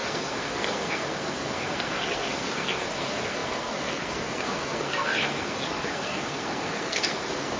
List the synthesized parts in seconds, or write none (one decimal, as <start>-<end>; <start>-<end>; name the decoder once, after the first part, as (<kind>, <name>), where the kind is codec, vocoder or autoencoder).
0.0-7.6 (codec, SNAC)